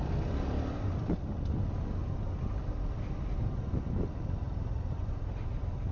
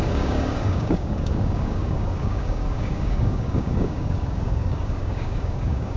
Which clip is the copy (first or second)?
second